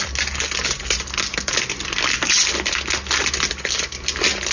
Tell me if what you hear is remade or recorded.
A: recorded